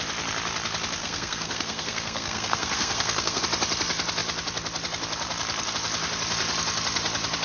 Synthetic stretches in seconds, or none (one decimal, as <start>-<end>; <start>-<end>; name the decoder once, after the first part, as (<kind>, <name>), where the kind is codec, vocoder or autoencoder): 1.0-3.4 (codec, SNAC)